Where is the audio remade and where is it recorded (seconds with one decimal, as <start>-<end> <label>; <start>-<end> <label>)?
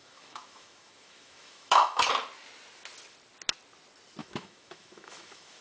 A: 0.0-2.1 remade; 2.1-4.2 recorded; 4.2-5.6 remade